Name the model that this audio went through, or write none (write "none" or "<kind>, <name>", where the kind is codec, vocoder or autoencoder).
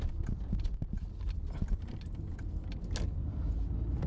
none